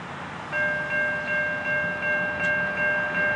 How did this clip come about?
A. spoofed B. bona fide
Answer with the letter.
B